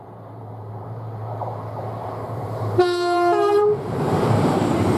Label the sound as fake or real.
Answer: fake